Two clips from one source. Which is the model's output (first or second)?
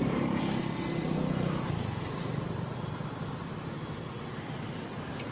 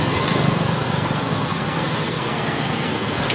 second